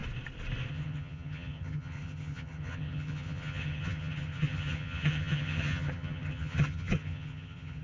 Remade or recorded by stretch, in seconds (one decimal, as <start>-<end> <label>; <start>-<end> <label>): 0.0-0.7 recorded; 0.7-7.8 remade